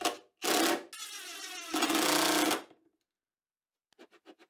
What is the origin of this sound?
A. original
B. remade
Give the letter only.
A